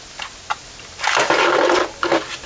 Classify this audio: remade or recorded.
recorded